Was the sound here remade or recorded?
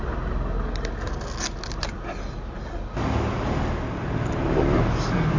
recorded